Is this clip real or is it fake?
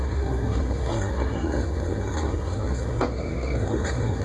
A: fake